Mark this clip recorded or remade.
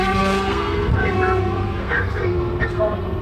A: remade